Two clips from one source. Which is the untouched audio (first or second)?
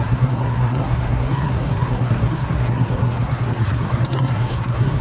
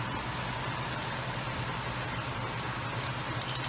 second